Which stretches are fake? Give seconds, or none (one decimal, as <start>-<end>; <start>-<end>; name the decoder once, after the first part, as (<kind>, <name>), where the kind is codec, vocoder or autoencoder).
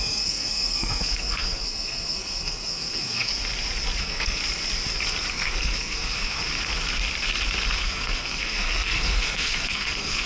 0.0-3.3 (codec, SNAC); 4.0-4.4; 5.3-6.4; 7.8-10.3